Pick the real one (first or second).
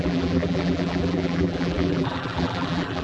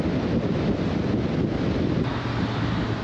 second